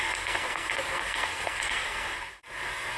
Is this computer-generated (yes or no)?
yes